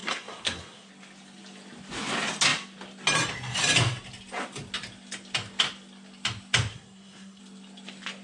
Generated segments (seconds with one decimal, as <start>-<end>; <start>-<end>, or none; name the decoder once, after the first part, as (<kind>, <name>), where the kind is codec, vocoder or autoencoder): 0.0-0.9 (codec, SNAC); 6.7-7.4